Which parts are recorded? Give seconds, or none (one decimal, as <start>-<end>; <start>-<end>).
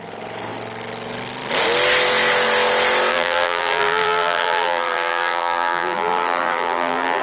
0.0-3.1